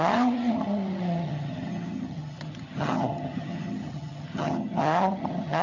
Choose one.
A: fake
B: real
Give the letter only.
A